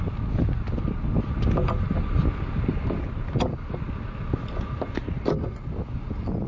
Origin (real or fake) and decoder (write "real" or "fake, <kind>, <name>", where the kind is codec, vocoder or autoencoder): real